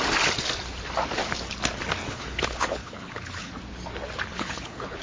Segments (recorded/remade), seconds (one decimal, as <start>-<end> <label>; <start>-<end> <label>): 0.0-2.1 recorded; 2.1-3.5 remade; 3.5-4.3 recorded; 4.3-5.0 remade